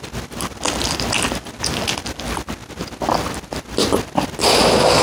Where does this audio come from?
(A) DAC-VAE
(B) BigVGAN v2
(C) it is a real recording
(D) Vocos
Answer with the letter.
C